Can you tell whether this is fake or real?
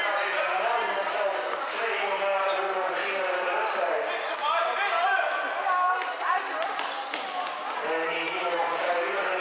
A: real